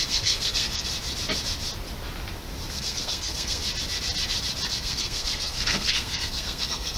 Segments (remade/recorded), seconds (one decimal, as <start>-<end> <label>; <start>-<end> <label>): 0.0-0.9 remade; 0.9-2.7 recorded; 2.7-3.6 remade; 3.6-4.7 recorded; 4.7-7.0 remade